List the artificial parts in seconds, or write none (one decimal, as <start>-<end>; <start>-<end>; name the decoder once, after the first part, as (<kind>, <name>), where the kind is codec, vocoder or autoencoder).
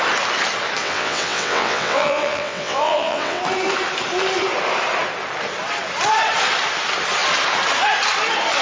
0.8-3.4 (vocoder, WaveNeXt)